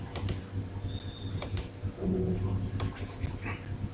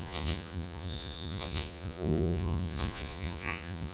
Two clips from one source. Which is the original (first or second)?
first